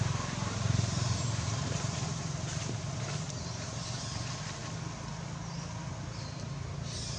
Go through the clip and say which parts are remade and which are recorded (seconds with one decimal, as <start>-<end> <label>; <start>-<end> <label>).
0.0-4.6 remade; 4.6-6.0 recorded; 6.0-7.2 remade